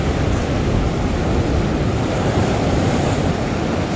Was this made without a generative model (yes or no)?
yes